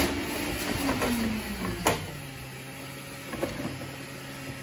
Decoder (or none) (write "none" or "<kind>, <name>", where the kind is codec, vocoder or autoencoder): none